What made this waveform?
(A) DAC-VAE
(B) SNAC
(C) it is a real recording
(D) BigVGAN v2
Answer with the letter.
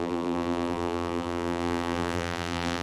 D